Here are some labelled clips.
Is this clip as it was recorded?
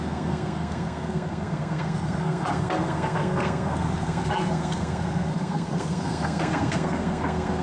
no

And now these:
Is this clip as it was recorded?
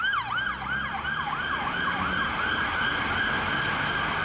yes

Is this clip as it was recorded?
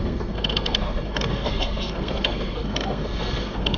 no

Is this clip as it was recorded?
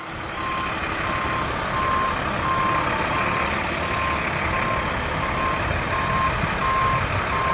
yes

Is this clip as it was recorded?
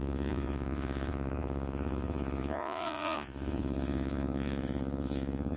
no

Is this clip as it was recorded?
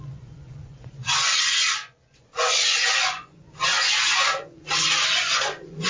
no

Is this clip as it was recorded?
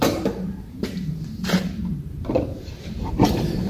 no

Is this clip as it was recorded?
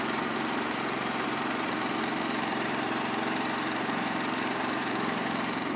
no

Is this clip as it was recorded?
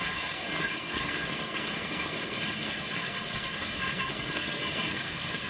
no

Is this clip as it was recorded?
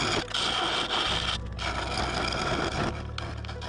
yes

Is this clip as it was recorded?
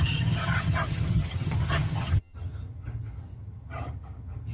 no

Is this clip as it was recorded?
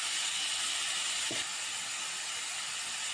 yes